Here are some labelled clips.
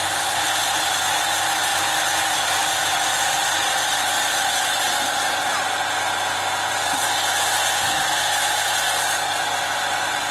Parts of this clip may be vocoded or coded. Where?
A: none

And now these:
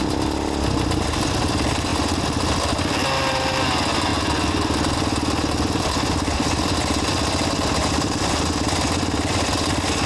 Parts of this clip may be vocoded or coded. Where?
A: none